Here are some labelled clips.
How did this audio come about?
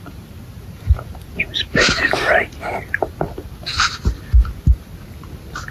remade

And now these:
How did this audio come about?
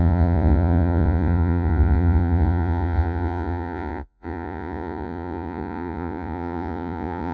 remade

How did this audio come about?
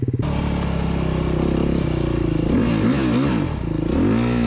recorded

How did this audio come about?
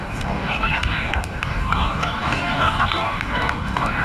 remade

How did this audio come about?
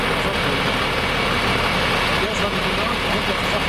recorded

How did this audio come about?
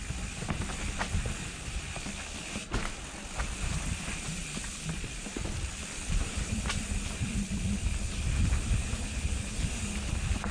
recorded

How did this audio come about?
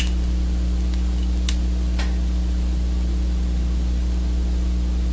recorded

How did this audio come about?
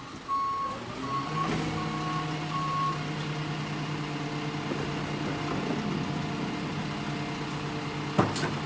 recorded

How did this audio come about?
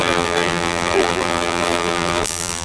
remade